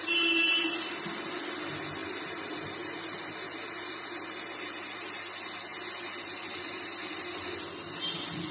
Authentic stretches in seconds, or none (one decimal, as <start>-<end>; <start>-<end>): 0.0-8.5

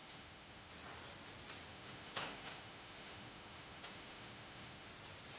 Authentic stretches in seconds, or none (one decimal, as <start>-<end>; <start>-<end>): 0.7-1.7; 4.9-5.4

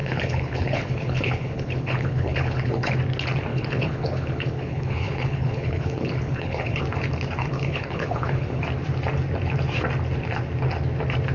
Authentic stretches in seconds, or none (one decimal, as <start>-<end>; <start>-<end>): 2.9-3.5; 6.8-7.4; 8.6-11.3